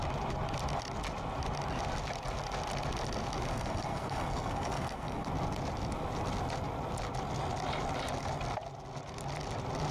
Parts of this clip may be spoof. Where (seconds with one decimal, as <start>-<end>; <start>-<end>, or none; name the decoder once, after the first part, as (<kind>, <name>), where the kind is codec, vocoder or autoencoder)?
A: 3.5-5.3 (codec, SNAC)

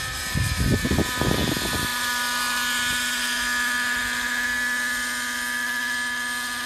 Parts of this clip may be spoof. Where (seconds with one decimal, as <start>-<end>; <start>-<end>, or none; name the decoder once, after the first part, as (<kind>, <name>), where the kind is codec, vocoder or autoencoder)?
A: none

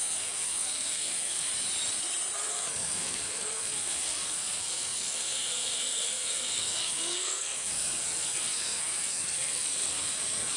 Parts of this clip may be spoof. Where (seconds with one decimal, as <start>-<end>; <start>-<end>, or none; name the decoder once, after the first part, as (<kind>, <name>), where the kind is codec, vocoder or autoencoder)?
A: 0.0-1.5 (codec, SNAC); 2.5-10.6

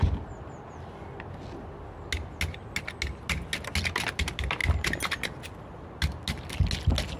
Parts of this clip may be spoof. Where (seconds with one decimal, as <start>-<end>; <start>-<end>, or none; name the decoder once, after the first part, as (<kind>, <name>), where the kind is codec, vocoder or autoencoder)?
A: none

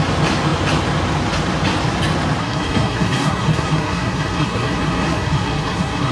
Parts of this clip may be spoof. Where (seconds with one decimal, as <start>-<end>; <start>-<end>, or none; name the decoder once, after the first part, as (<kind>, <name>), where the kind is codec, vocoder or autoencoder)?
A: 2.4-6.1 (codec, SNAC)

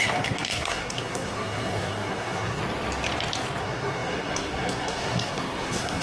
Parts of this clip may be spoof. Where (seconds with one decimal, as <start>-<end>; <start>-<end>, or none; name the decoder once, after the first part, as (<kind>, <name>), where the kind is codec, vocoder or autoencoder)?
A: 0.0-2.6 (codec, SNAC); 3.6-6.0

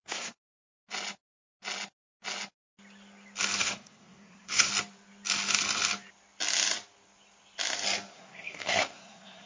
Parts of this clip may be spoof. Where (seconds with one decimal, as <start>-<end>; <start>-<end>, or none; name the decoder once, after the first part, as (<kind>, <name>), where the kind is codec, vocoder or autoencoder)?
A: 0.0-0.4 (codec, SNAC); 3.6-4.7; 8.1-9.5

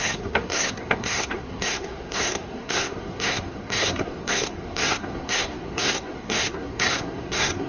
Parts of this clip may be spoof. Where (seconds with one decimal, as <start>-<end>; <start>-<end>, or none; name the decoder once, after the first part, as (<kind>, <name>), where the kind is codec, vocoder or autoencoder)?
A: 0.0-7.7 (codec, SNAC)